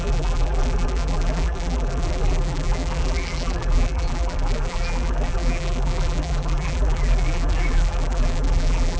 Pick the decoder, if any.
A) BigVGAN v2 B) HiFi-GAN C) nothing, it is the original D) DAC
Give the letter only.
A